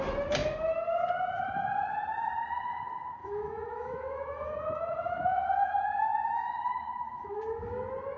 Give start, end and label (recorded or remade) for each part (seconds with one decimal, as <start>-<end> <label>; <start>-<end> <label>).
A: 0.0-3.2 recorded; 3.2-7.4 remade; 7.4-8.2 recorded